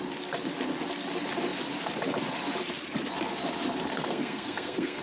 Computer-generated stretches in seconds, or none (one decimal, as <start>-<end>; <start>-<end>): 3.9-5.0